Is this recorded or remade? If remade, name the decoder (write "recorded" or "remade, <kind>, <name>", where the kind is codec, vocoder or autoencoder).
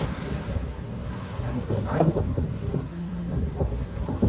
remade, codec, SNAC